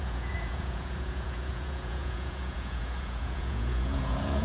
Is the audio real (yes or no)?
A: no